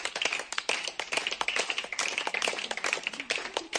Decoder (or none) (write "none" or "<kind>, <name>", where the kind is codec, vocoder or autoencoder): vocoder, BigVGAN v2